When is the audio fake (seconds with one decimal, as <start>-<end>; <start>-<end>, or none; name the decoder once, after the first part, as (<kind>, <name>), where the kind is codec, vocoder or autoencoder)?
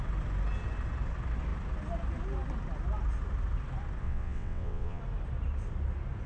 4.0-5.0 (vocoder, WaveNeXt)